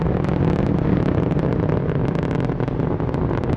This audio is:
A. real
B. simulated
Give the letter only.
A